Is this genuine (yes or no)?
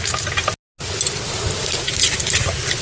yes